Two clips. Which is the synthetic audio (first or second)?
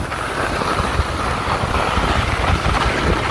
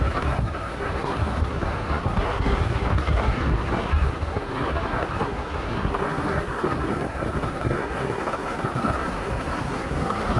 second